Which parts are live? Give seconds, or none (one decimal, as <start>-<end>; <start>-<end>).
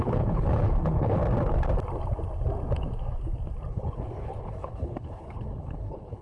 1.2-3.7